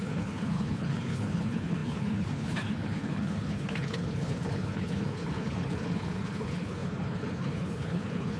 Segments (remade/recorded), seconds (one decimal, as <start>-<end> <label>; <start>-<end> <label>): 0.0-8.4 remade